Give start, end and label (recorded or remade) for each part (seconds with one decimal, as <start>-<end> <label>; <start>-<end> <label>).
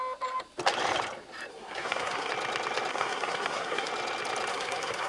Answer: 0.0-1.5 recorded; 1.5-2.3 remade; 2.3-2.9 recorded; 2.9-3.9 remade; 3.9-4.5 recorded; 4.5-5.1 remade